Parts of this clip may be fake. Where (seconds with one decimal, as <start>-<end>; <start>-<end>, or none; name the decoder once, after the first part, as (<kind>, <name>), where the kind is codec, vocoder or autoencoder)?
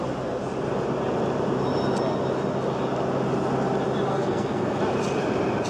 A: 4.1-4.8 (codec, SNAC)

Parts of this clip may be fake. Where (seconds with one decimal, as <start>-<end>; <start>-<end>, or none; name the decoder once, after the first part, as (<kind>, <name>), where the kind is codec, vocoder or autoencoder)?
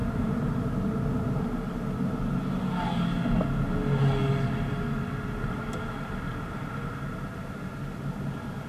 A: none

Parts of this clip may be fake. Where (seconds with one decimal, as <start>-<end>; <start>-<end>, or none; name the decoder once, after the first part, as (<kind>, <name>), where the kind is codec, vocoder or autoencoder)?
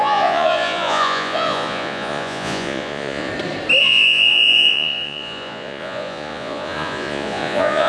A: 0.0-3.3 (vocoder, Vocos); 3.8-7.9